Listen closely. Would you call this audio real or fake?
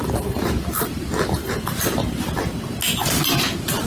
real